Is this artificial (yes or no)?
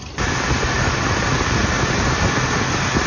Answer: no